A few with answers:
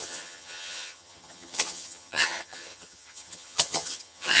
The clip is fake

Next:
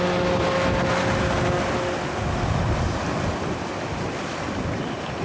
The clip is real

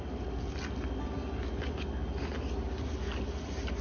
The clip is real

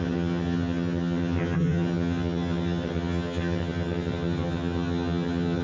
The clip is fake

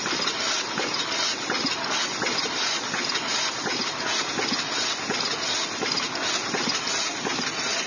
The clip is real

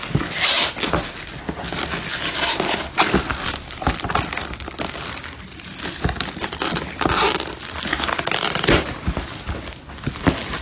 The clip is real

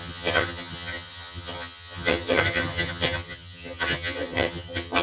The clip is fake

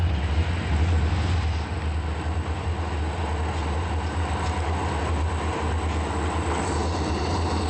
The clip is real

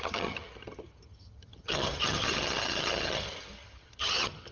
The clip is fake